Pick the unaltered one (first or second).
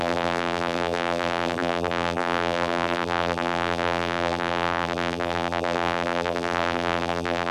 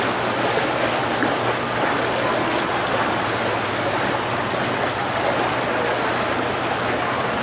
second